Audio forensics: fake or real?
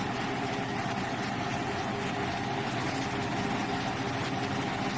real